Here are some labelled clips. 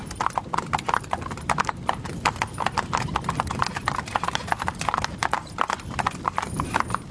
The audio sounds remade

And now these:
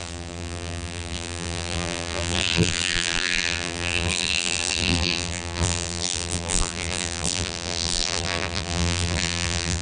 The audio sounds remade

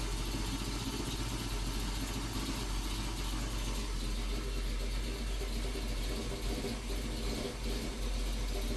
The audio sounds recorded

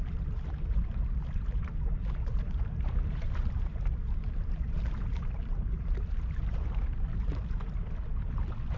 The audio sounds remade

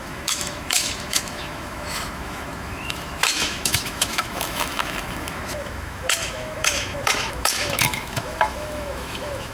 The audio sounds remade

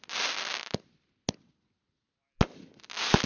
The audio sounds recorded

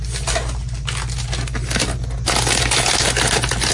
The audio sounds recorded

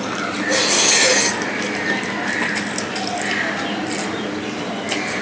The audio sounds recorded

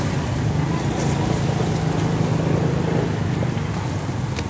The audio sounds recorded